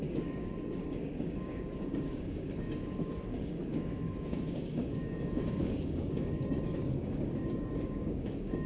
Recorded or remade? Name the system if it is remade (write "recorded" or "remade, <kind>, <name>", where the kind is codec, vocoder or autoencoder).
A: remade, codec, DAC